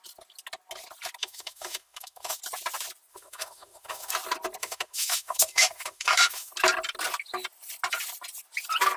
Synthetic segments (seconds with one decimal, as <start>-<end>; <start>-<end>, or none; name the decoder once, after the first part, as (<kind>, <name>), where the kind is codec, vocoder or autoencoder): 1.2-2.4 (autoencoder, DAC-VAE); 3.1-4.1; 4.6-6.5